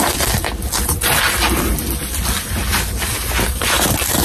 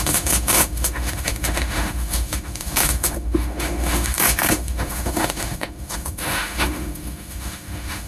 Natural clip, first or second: first